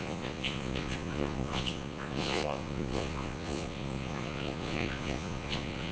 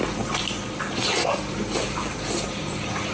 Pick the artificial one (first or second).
first